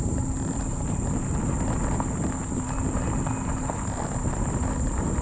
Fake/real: real